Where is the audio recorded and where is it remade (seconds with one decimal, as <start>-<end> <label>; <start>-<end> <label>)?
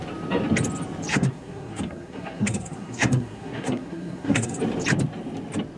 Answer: 0.0-1.1 recorded; 1.1-4.6 remade; 4.6-5.8 recorded